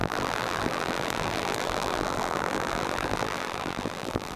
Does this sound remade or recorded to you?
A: remade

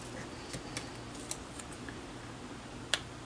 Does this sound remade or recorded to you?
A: recorded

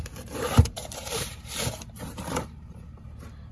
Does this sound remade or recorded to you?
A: remade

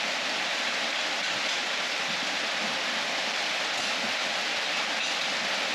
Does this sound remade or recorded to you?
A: recorded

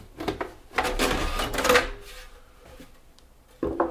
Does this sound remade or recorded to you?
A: recorded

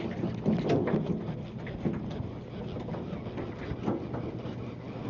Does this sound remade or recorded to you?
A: recorded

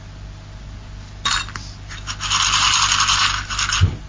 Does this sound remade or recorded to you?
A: recorded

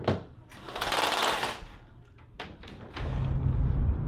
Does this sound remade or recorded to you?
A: recorded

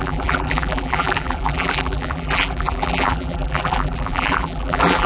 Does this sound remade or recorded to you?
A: remade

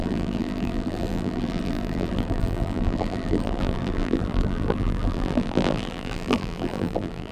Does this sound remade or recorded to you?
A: remade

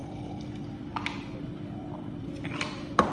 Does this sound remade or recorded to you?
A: remade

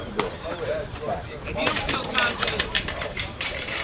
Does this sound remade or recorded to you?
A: remade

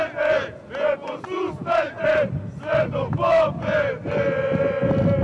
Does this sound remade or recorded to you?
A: recorded